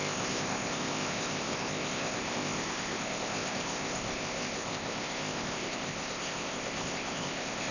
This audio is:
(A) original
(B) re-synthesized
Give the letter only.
B